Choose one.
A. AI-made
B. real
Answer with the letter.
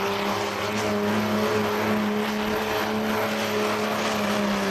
B